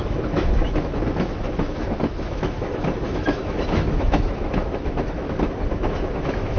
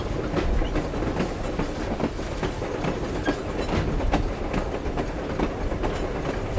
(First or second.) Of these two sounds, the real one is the second